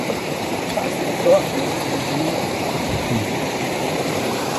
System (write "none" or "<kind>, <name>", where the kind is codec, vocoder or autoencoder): vocoder, BigVGAN v2